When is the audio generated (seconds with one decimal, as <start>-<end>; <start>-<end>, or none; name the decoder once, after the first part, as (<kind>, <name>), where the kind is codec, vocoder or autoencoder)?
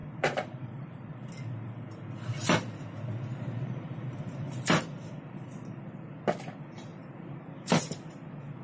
0.0-1.3 (vocoder, BigVGAN v2); 3.3-4.8; 6.9-7.8